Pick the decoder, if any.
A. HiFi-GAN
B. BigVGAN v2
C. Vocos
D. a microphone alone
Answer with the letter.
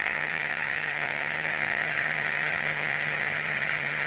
A